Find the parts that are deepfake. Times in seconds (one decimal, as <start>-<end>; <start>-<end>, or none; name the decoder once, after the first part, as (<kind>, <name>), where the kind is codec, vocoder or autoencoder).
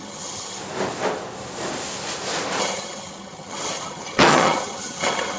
0.0-0.6 (vocoder, HiFi-GAN); 2.6-5.4